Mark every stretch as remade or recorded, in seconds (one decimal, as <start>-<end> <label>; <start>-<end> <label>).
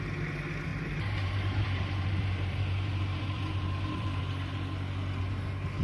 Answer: 0.0-0.7 recorded; 0.7-4.2 remade; 4.2-5.8 recorded